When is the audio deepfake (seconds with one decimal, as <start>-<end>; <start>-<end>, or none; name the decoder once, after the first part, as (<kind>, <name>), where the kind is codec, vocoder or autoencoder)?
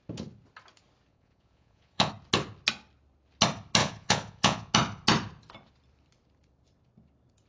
1.1-2.1 (vocoder, Vocos); 3.8-4.7